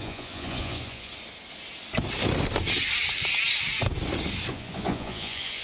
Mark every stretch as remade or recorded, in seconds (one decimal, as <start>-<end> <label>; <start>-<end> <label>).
0.0-1.1 remade; 1.1-4.5 recorded; 4.5-5.6 remade